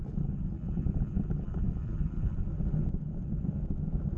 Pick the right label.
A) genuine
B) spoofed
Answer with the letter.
A